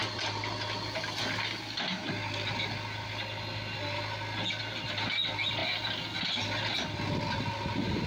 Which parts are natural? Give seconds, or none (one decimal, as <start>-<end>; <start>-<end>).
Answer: 0.0-8.1